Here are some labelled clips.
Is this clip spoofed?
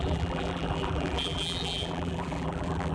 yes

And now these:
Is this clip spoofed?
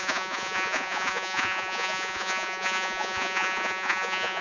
yes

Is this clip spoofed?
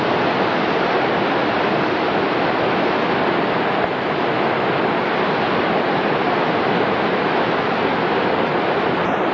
no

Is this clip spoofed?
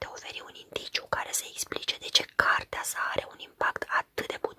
no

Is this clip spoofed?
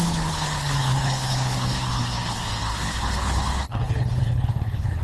yes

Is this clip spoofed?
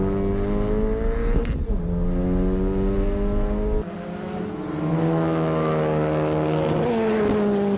no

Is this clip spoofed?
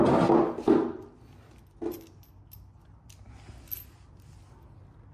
no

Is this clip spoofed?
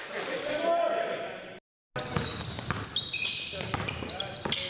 no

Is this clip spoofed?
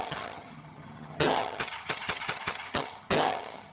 yes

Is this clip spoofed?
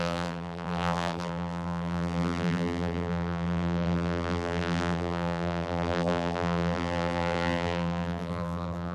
yes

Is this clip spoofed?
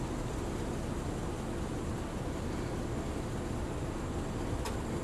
no